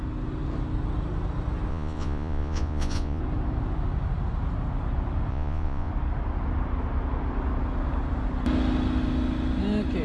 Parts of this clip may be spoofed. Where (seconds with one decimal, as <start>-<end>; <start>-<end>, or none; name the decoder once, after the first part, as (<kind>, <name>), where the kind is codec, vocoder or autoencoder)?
1.7-3.2 (vocoder, Vocos); 5.3-5.9